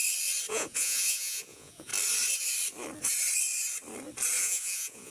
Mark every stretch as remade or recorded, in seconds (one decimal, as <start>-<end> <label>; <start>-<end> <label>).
0.0-0.5 recorded; 0.5-1.9 remade; 1.9-4.4 recorded; 4.4-5.1 remade